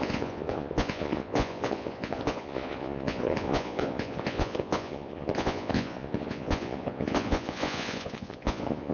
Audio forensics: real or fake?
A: fake